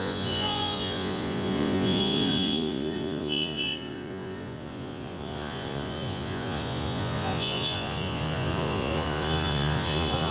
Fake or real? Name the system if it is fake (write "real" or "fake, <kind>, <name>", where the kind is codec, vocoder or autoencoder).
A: fake, vocoder, Vocos